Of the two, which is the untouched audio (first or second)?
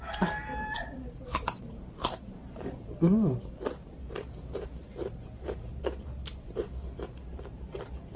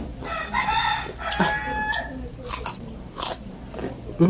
second